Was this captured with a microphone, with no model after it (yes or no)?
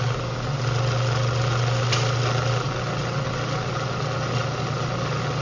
yes